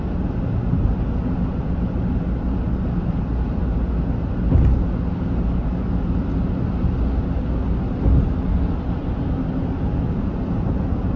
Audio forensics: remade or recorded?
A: recorded